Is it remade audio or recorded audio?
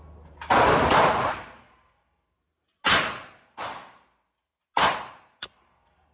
recorded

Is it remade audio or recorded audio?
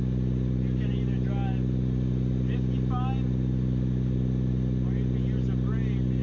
recorded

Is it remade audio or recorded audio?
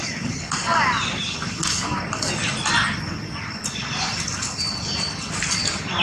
recorded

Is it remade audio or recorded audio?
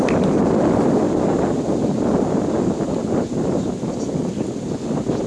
recorded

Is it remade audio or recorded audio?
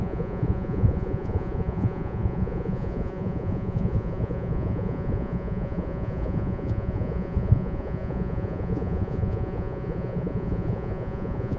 remade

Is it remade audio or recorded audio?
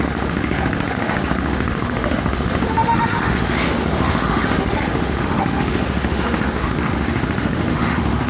remade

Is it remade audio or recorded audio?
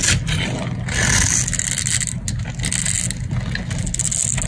recorded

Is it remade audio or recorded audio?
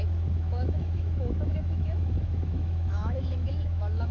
remade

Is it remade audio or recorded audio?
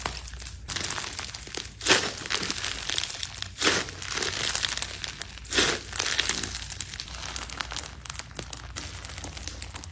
recorded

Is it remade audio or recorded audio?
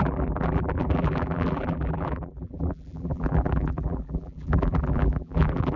remade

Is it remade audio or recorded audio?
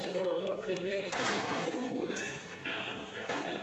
remade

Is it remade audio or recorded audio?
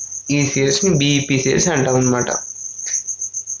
recorded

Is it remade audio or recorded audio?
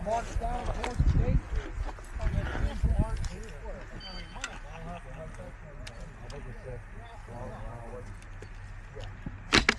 recorded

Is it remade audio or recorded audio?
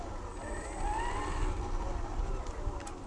recorded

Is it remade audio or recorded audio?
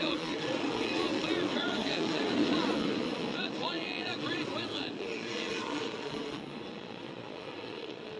remade